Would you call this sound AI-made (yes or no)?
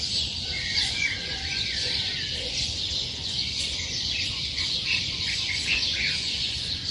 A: yes